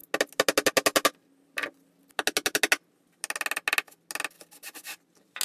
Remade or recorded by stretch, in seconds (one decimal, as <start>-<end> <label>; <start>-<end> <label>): 0.0-5.4 recorded